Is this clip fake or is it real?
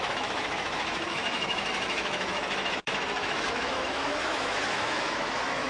fake